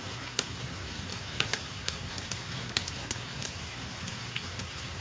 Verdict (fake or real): fake